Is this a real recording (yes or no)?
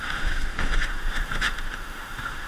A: no